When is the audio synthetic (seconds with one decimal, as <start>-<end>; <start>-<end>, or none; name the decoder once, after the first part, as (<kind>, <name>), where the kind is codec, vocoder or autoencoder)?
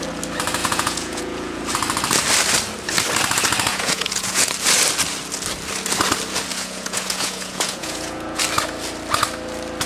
0.6-1.6 (vocoder, Vocos); 3.7-4.5; 6.5-8.4